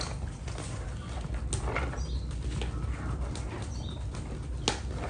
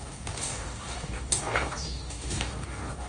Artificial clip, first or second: second